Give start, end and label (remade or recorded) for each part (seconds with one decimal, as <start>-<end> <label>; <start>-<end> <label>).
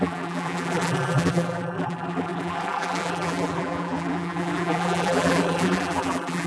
0.0-6.5 remade